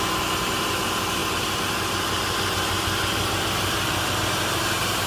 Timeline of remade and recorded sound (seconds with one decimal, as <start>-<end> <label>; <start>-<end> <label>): 0.0-1.2 recorded; 1.2-4.3 remade; 4.3-5.1 recorded